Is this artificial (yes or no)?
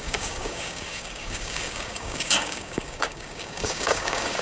yes